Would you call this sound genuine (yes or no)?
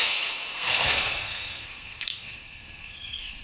no